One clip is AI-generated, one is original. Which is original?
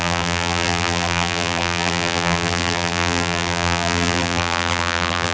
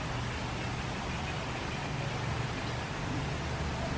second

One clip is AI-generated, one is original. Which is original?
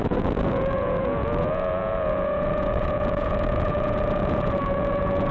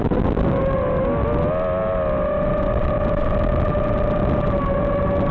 second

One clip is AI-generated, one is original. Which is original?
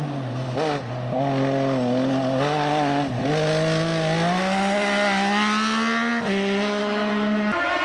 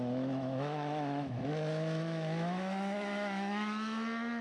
first